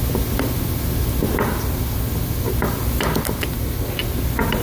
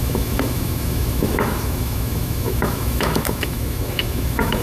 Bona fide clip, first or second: first